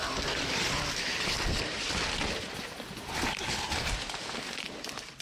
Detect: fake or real real